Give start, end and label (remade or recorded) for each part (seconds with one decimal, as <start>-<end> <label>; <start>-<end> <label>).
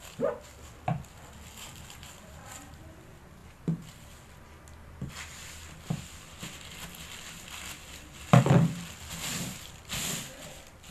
0.0-10.9 recorded